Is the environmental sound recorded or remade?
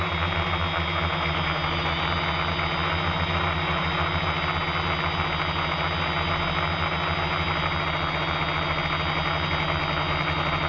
recorded